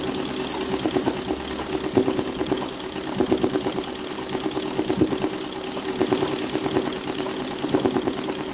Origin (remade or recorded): recorded